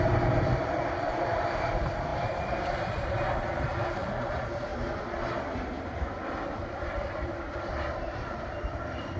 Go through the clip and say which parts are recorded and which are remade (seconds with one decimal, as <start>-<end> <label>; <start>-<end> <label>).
0.0-4.7 remade; 4.7-5.5 recorded; 5.5-9.2 remade